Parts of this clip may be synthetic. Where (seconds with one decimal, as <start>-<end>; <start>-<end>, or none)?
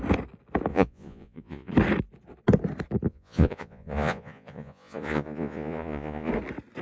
0.7-1.7; 3.1-6.3